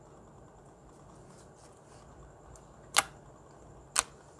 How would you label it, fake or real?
real